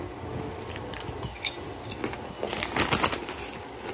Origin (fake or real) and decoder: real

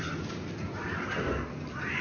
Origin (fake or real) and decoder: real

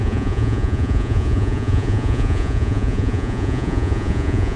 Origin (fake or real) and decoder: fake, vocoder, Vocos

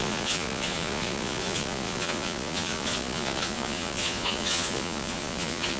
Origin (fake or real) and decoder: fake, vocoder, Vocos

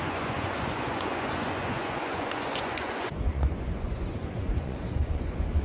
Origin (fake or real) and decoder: fake, vocoder, Vocos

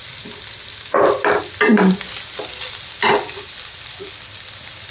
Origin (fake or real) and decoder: real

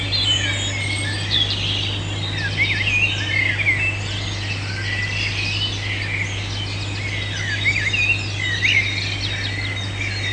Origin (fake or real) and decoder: real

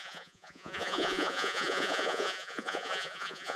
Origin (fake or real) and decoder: fake, vocoder, Vocos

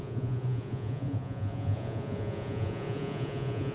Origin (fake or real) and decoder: fake, vocoder, Vocos